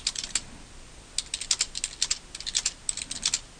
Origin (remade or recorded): recorded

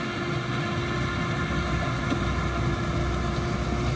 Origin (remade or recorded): recorded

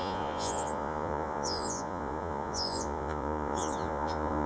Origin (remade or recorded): remade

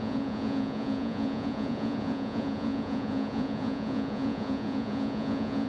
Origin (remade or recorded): remade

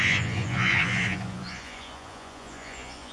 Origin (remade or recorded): remade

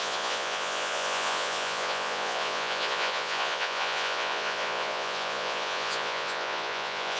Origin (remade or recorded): remade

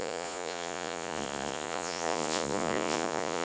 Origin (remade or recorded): remade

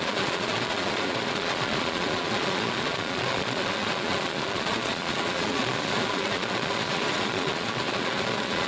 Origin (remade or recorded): remade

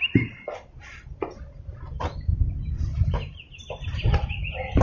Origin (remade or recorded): recorded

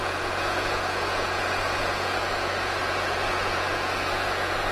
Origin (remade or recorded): remade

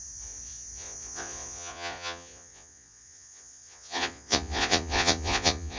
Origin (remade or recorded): remade